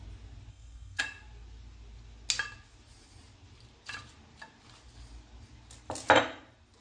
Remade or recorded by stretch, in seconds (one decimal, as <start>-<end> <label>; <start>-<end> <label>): 0.0-0.5 recorded; 0.5-1.0 remade; 1.0-6.8 recorded